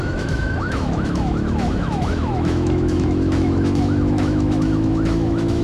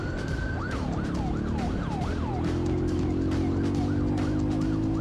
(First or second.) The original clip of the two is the second